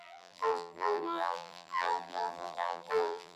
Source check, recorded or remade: remade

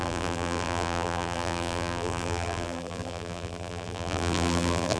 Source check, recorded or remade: remade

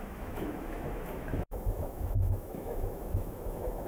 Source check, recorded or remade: remade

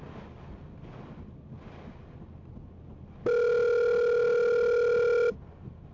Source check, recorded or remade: recorded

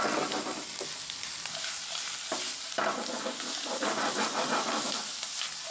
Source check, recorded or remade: recorded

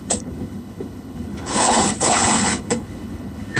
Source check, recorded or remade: remade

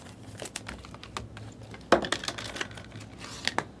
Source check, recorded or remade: recorded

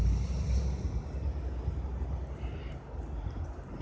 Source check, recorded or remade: recorded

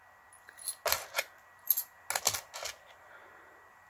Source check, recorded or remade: recorded